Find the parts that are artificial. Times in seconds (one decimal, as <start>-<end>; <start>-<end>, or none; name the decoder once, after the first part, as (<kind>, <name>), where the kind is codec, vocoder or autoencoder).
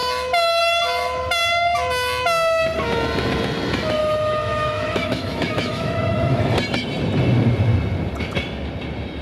4.0-6.4 (autoencoder, DAC-VAE)